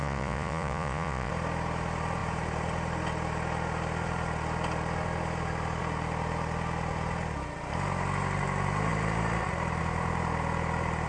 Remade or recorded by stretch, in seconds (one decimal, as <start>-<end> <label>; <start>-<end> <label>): 0.0-1.3 remade; 1.3-11.1 recorded